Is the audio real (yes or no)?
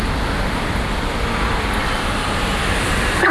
yes